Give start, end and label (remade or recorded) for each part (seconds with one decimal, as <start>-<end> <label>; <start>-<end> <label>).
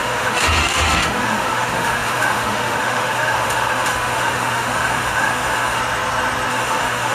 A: 0.0-5.8 remade; 5.8-6.5 recorded; 6.5-7.1 remade